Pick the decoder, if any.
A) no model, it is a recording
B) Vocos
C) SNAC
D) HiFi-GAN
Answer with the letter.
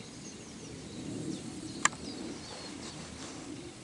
A